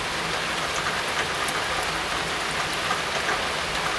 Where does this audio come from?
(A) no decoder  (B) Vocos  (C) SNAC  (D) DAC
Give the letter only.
A